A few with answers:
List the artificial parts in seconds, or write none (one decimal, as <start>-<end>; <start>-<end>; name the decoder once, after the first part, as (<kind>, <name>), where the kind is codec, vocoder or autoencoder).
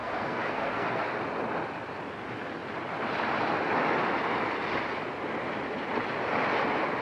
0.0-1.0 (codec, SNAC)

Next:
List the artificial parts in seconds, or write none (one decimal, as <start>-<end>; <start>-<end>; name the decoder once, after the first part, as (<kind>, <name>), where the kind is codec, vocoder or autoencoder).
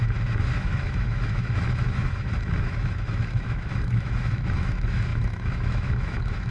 0.0-6.5 (autoencoder, DAC-VAE)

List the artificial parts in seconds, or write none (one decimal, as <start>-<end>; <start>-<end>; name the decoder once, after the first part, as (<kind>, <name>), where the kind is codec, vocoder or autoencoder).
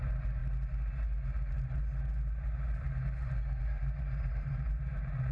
0.0-0.4 (vocoder, BigVGAN v2); 3.6-5.3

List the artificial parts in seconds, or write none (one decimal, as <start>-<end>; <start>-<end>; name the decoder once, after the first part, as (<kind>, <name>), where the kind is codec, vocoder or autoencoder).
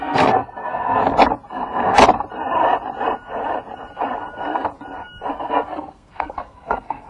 0.0-1.0 (codec, SNAC); 5.3-7.1